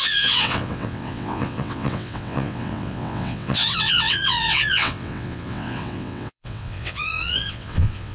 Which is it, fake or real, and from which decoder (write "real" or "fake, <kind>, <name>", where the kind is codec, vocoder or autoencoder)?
fake, vocoder, WaveNeXt